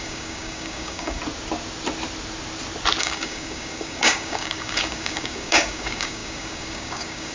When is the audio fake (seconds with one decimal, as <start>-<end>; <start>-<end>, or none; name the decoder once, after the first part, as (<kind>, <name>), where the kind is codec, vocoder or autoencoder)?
0.0-1.2 (codec, DAC); 3.0-7.3